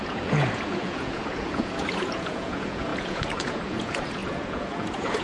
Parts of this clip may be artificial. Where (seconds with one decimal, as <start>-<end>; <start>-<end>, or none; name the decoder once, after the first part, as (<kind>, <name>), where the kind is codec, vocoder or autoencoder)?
0.0-5.2 (vocoder, Vocos)